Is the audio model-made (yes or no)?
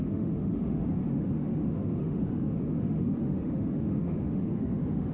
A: yes